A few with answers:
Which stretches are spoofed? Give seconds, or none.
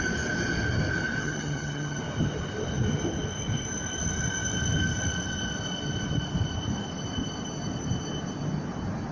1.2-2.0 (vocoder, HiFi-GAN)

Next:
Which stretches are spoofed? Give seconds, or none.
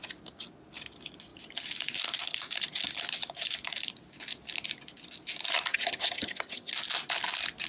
5.7-6.7 (vocoder, HiFi-GAN)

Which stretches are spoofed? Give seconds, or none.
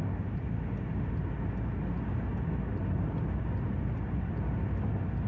none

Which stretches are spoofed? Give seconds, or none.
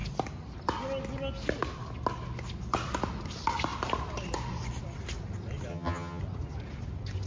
5.7-6.2 (vocoder, HiFi-GAN)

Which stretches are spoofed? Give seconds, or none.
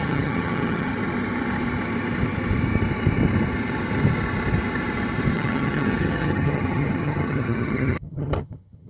0.0-0.9 (vocoder, HiFi-GAN); 5.3-8.9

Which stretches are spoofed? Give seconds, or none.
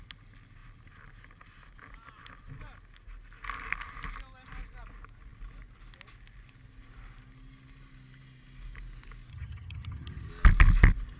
9.3-10.3 (vocoder, HiFi-GAN)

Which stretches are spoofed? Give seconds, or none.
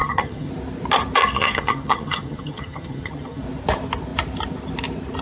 0.0-0.5 (vocoder, HiFi-GAN); 1.2-3.4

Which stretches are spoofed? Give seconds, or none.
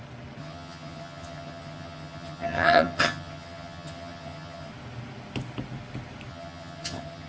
0.4-4.7 (vocoder, HiFi-GAN); 6.3-7.3